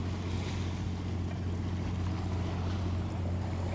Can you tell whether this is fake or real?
real